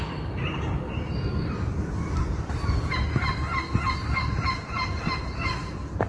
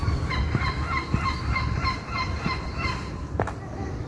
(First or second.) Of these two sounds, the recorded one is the first